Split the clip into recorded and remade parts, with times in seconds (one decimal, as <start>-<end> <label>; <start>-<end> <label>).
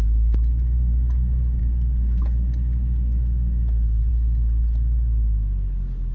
0.0-6.1 recorded